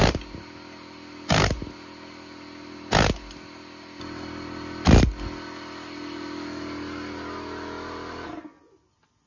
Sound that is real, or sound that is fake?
real